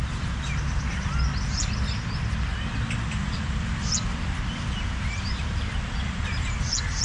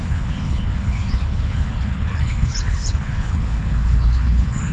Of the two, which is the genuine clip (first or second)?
first